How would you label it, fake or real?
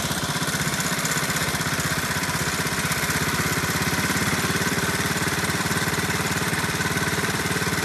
fake